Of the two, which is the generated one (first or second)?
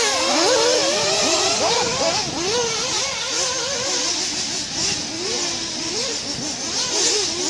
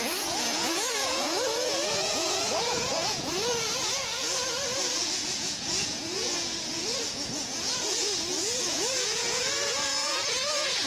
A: second